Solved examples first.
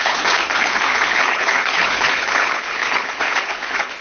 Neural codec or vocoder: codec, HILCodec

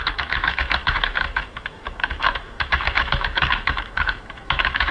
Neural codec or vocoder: autoencoder, DAC-VAE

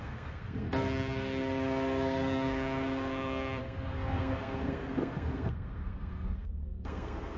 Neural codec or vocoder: codec, SNAC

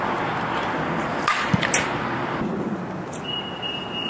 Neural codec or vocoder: none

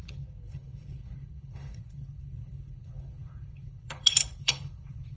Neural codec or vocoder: codec, HILCodec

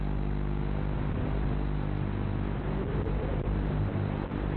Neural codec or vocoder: none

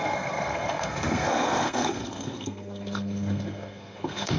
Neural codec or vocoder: codec, SNAC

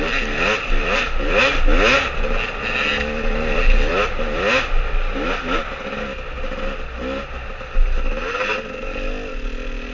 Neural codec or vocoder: none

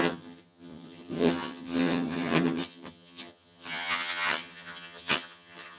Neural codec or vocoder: vocoder, HiFi-GAN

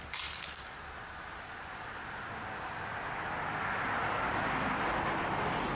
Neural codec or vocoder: none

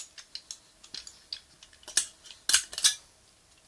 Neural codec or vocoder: none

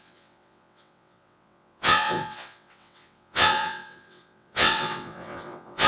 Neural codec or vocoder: vocoder, WaveNeXt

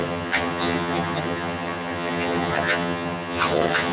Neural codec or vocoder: vocoder, HiFi-GAN